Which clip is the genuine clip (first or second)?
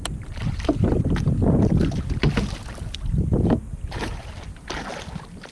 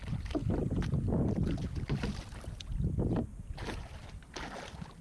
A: first